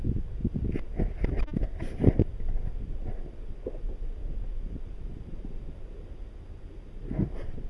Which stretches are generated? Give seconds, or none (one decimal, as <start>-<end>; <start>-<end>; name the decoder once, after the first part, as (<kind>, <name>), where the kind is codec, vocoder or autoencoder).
none